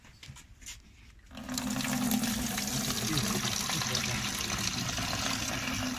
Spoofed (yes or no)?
no